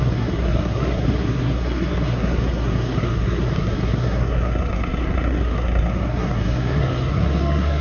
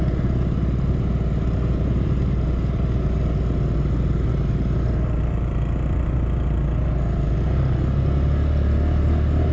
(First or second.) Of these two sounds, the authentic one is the second